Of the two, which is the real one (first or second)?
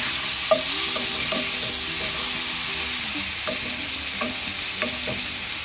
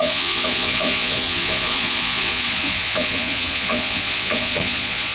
first